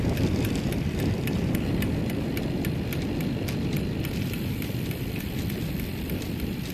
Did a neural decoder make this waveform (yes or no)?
no